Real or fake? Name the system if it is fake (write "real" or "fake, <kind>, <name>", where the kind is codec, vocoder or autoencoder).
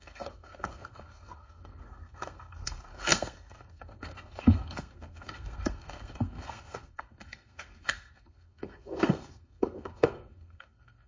fake, codec, SNAC